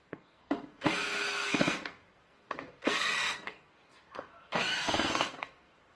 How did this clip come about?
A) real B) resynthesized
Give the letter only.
B